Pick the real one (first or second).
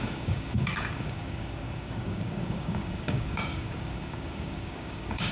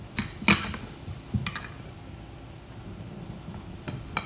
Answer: second